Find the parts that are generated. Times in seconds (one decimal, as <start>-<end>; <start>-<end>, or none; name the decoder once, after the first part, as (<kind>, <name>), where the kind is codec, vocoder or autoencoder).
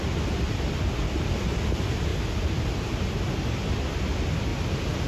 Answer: 2.1-3.0 (vocoder, BigVGAN v2); 4.5-5.1